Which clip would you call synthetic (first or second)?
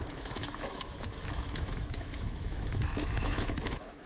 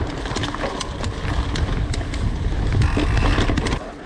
first